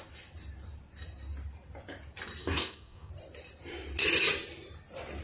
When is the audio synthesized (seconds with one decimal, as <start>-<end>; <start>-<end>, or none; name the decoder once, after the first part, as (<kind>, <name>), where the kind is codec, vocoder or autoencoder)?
2.4-3.1 (codec, DAC)